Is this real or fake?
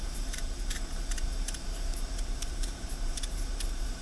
fake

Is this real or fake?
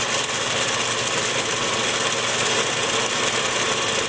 real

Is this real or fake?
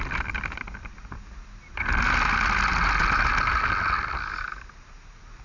real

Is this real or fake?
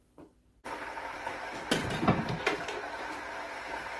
real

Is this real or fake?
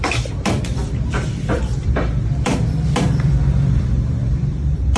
fake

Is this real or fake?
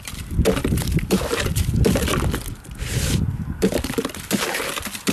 fake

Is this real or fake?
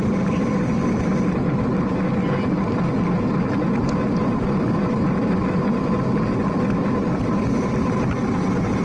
real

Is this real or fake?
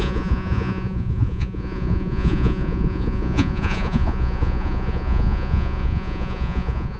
fake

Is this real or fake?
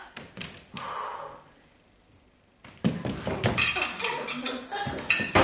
real